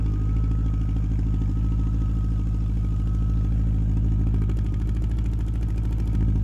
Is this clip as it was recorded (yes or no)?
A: yes